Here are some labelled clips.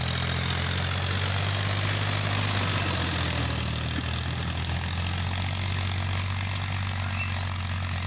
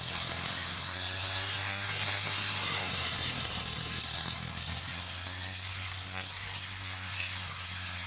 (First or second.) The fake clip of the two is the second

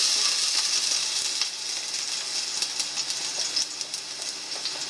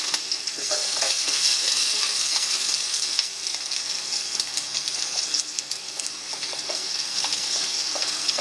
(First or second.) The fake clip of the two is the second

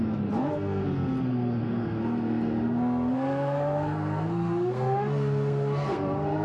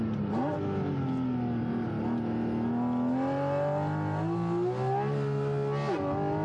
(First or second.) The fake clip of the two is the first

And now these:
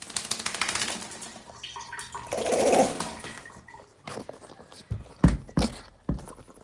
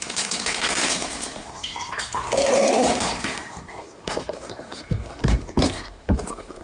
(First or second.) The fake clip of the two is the second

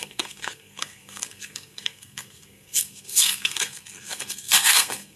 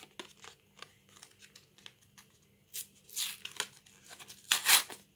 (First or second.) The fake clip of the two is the first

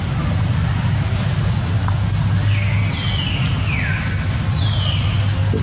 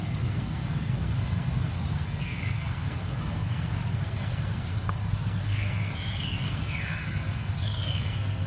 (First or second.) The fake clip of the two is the second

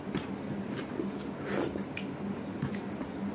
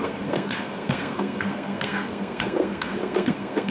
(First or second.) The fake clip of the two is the second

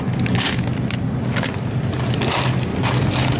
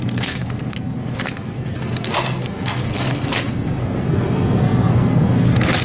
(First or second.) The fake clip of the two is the second